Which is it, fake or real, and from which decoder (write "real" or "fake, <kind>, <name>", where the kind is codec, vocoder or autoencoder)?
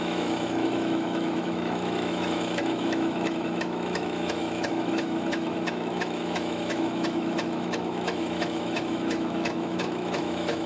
fake, autoencoder, DAC-VAE